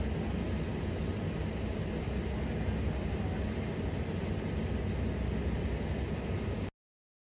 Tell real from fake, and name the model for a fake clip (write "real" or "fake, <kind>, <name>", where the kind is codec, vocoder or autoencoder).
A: real